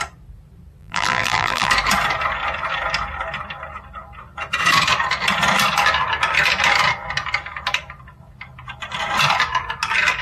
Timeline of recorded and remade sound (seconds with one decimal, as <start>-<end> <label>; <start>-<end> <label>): 0.0-0.8 recorded; 0.8-1.7 remade; 1.7-10.2 recorded